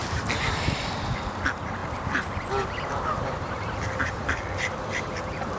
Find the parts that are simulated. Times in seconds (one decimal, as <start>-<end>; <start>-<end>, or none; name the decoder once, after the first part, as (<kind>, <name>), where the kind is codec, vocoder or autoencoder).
0.0-0.8 (vocoder, BigVGAN v2); 1.8-5.6